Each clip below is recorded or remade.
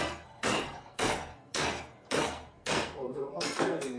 remade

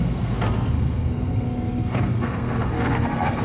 remade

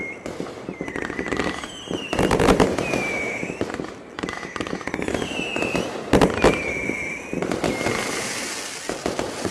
recorded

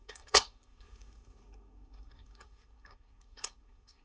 remade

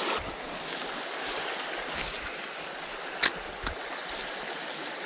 recorded